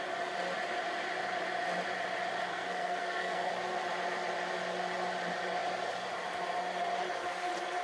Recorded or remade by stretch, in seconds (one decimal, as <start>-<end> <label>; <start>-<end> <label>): 0.0-2.5 recorded; 2.5-3.5 remade; 3.5-7.8 recorded